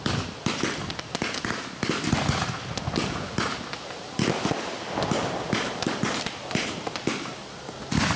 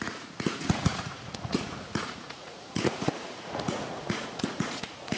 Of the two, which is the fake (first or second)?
second